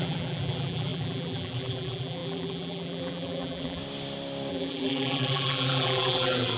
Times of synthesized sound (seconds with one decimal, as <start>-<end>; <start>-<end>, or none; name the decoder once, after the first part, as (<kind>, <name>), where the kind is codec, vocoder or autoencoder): 0.0-3.8 (vocoder, BigVGAN v2); 4.5-6.6